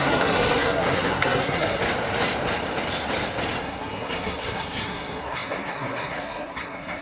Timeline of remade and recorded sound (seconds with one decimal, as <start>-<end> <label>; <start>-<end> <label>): 0.0-1.8 remade; 1.8-3.6 recorded; 3.6-7.0 remade